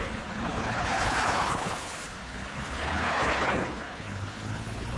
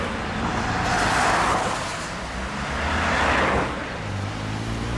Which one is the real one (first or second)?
second